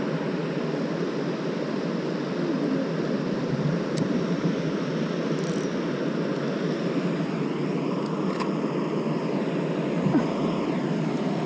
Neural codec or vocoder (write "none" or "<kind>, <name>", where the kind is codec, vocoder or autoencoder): none